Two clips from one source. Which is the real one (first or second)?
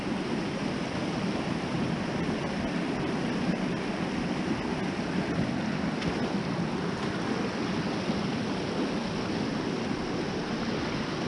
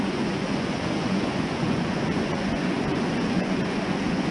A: first